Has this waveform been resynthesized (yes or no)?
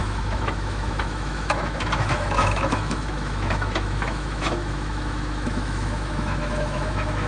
yes